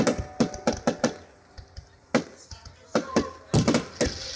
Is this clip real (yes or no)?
yes